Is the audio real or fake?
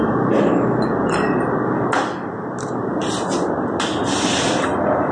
real